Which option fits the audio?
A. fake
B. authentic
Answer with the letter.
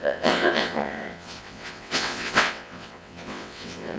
A